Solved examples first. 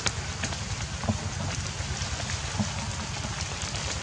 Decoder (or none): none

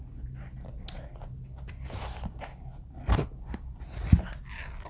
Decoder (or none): none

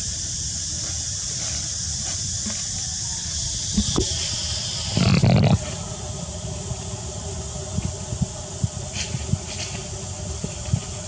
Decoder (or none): none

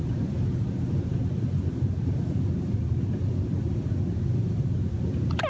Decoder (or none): none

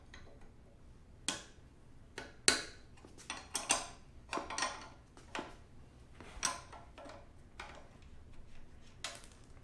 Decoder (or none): none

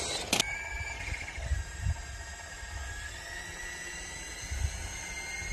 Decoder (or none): none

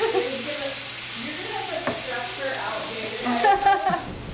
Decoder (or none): none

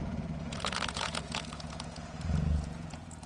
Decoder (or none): vocoder, Vocos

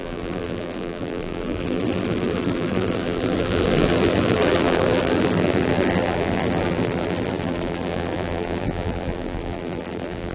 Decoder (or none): vocoder, BigVGAN v2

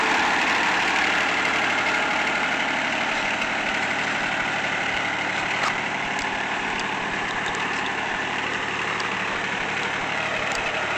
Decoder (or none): vocoder, BigVGAN v2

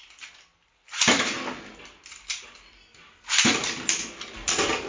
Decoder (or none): none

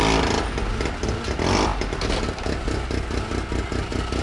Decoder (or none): none